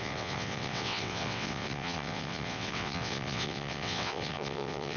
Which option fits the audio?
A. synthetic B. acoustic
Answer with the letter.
A